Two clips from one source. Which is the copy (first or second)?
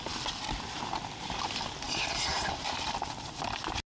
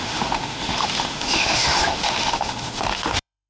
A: second